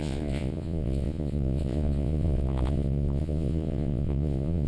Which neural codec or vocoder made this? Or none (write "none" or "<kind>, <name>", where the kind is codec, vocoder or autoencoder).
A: vocoder, Vocos